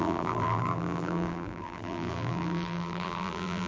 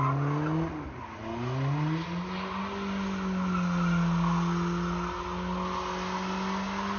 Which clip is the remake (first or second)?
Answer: first